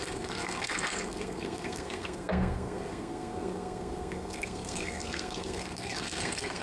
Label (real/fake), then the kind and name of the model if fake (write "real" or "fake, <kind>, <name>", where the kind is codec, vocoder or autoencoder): fake, codec, SNAC